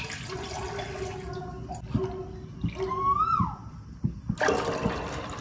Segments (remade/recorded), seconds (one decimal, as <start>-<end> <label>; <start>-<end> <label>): 0.0-5.4 recorded